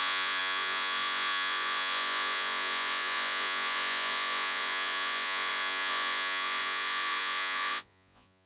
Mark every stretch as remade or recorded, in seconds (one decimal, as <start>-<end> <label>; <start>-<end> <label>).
0.0-8.5 remade